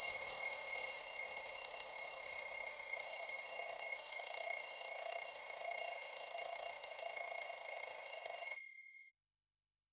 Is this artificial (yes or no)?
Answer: yes